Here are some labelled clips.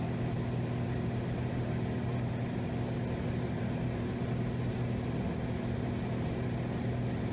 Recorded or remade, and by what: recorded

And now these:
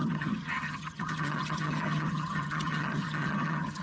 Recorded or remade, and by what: remade, vocoder, HiFi-GAN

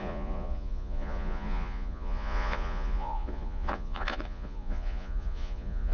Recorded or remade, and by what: remade, vocoder, Vocos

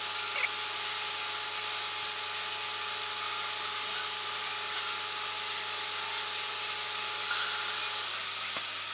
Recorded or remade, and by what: recorded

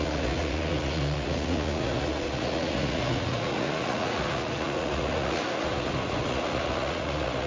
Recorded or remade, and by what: remade, vocoder, Vocos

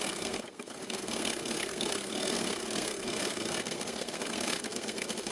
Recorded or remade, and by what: remade, codec, SNAC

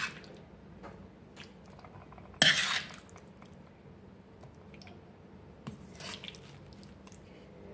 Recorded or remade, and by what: recorded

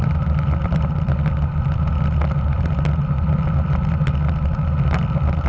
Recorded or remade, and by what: recorded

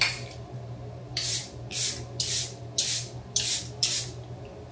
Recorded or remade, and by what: recorded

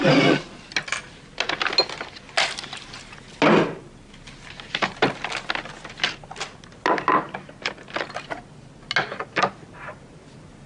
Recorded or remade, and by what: recorded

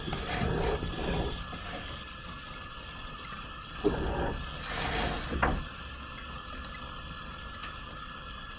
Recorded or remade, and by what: recorded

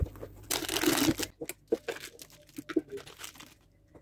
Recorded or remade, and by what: recorded